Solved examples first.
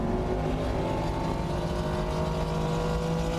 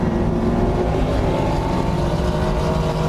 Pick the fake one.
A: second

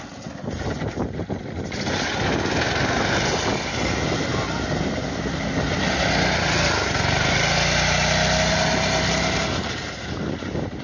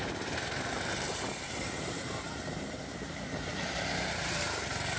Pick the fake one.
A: second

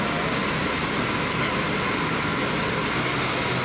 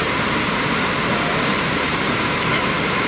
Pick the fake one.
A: second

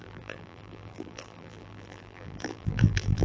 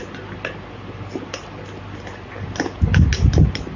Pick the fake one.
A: first